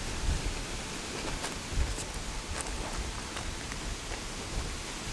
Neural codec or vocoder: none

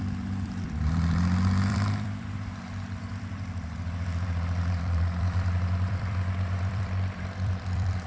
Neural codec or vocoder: vocoder, BigVGAN v2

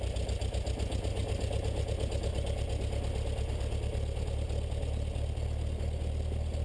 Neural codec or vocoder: none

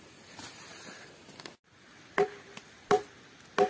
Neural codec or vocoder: none